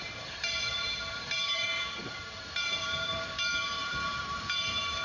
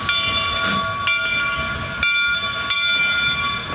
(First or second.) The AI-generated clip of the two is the first